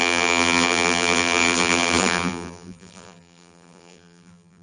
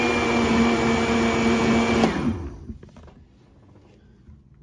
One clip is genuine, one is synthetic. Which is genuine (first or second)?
second